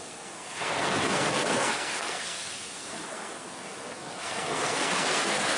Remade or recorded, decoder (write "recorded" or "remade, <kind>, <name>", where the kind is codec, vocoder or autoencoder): remade, codec, SNAC